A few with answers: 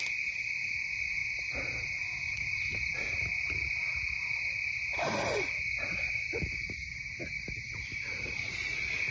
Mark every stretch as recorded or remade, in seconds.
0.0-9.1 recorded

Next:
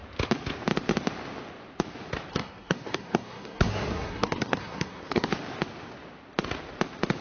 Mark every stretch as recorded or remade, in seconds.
0.0-2.3 recorded; 2.3-5.3 remade; 5.3-7.2 recorded

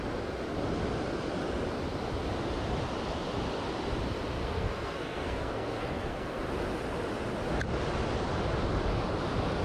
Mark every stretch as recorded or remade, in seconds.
0.0-4.4 recorded; 4.4-6.4 remade; 6.4-9.6 recorded

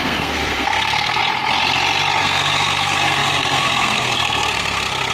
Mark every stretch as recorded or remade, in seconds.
0.0-1.2 remade; 1.2-2.2 recorded; 2.2-5.1 remade

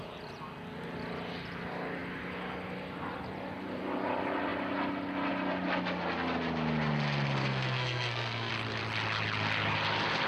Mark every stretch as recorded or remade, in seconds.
0.0-7.4 recorded; 7.4-8.5 remade; 8.5-10.3 recorded

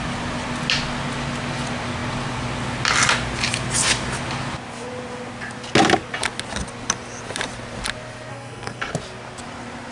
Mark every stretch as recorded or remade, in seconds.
0.0-8.3 recorded; 8.3-8.9 remade; 8.9-9.9 recorded